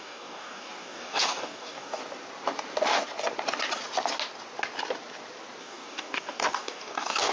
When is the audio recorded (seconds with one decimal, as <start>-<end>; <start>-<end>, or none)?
2.0-5.6